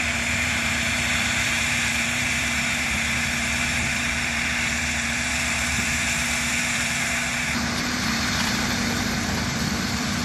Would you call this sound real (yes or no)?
no